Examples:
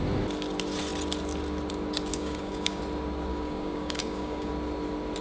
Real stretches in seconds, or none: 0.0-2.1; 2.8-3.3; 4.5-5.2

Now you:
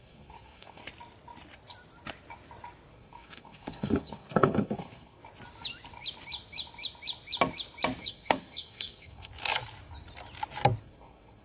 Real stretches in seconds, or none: 0.8-2.9; 5.2-8.0; 9.3-10.8

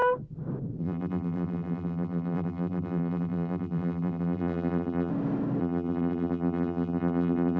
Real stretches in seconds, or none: 0.0-0.8; 5.1-5.6

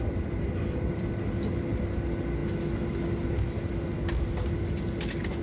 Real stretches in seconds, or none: 0.0-5.4

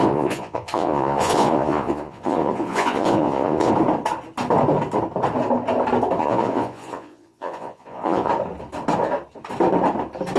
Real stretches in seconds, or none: 3.7-6.2; 8.3-10.4

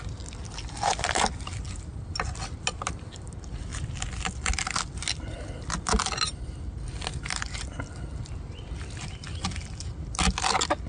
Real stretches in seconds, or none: 0.0-10.9